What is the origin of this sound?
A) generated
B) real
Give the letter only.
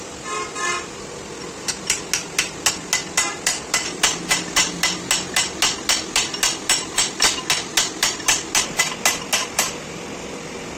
B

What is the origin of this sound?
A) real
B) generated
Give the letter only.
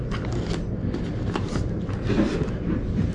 A